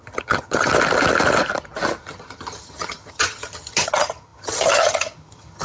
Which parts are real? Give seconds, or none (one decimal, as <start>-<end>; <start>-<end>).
0.7-2.0